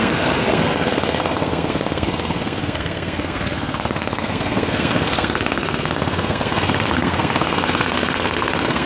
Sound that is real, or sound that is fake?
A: fake